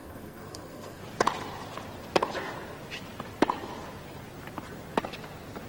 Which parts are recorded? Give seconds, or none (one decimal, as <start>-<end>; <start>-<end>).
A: 1.0-5.7